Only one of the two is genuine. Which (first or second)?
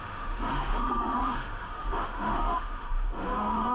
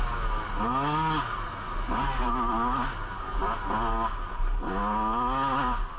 second